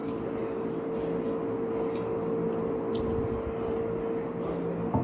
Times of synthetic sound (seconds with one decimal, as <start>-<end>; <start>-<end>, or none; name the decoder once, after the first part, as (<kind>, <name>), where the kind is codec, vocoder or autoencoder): none